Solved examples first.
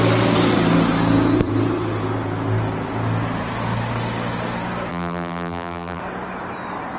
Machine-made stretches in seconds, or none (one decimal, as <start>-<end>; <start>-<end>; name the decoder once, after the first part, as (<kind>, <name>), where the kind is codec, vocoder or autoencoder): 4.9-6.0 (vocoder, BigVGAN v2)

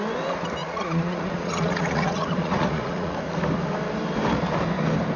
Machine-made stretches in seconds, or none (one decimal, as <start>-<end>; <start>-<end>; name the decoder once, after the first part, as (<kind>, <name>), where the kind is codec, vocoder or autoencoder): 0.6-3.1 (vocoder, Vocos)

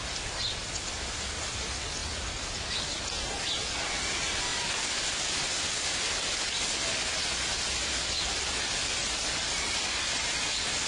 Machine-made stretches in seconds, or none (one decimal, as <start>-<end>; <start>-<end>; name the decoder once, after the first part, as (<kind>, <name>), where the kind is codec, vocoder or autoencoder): 4.5-5.2 (vocoder, BigVGAN v2); 9.0-10.0

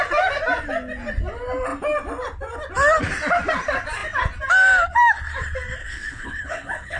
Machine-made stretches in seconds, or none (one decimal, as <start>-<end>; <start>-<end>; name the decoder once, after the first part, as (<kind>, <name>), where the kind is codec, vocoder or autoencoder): 5.8-7.0 (codec, HILCodec)

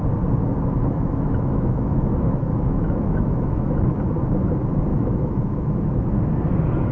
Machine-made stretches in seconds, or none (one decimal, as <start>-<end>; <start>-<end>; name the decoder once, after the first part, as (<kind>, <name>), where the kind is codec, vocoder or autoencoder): 0.8-4.1 (autoencoder, DAC-VAE); 4.9-6.1